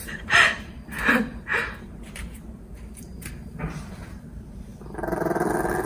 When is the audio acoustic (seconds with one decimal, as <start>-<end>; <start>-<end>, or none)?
4.7-5.9